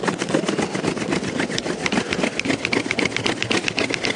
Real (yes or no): yes